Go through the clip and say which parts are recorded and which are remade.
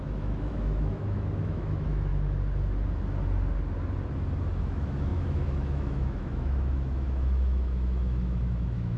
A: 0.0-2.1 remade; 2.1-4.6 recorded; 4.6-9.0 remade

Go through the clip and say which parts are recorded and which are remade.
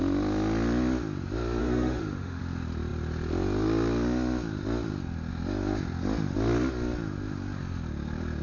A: 0.0-1.6 recorded; 1.6-2.4 remade; 2.4-8.4 recorded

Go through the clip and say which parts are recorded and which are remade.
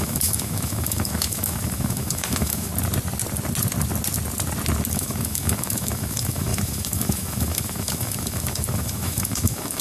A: 0.0-2.7 remade; 2.7-4.9 recorded; 4.9-9.8 remade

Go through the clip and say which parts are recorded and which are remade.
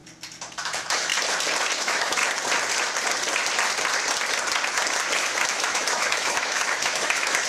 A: 0.0-0.6 recorded; 0.6-1.1 remade; 1.1-1.8 recorded; 1.8-2.2 remade; 2.2-5.2 recorded; 5.2-7.5 remade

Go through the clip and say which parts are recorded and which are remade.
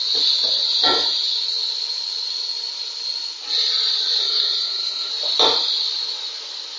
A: 0.0-4.2 recorded; 4.2-5.1 remade; 5.1-6.8 recorded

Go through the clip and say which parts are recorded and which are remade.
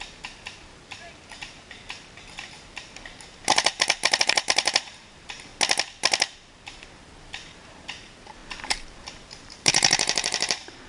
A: 0.0-5.5 remade; 5.5-7.2 recorded; 7.2-10.9 remade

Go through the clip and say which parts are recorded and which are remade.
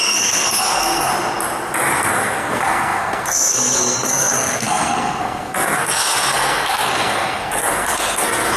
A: 0.0-1.1 remade; 1.1-1.9 recorded; 1.9-8.6 remade